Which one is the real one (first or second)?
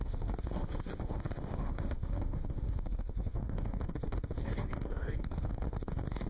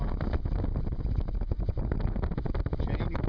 second